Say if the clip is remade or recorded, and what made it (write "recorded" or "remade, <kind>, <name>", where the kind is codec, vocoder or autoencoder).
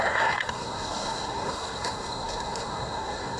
remade, codec, SNAC